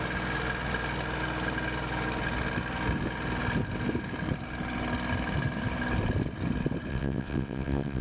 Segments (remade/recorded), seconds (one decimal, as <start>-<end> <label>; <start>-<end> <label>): 0.0-6.9 recorded; 6.9-8.0 remade